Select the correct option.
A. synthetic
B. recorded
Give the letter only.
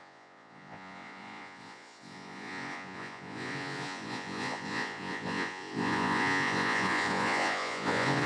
A